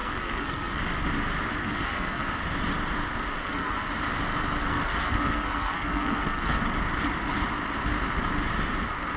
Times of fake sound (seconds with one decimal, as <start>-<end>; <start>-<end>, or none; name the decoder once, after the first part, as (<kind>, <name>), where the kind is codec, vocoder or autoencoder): 0.0-0.8 (codec, SNAC); 1.6-2.3; 3.4-3.9; 4.6-6.6